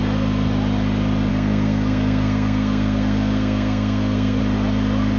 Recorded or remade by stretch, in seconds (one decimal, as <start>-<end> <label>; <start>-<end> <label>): 0.0-1.3 recorded; 1.3-4.4 remade; 4.4-5.2 recorded